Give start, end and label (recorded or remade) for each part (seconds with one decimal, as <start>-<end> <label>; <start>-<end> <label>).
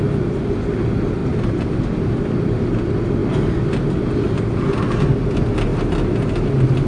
0.0-6.9 recorded